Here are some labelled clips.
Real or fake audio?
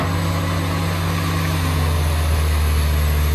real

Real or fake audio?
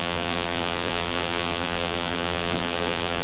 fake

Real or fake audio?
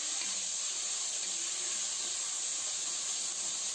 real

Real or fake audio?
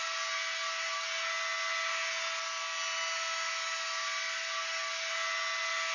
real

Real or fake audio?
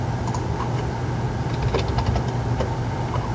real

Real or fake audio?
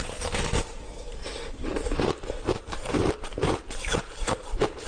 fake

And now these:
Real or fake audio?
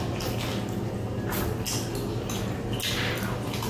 real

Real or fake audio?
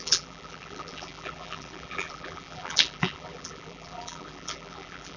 fake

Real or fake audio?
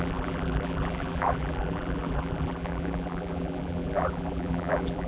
fake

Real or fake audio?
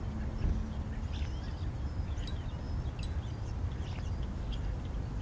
real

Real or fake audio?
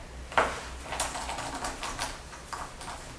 real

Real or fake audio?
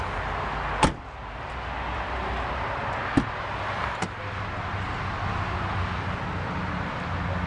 real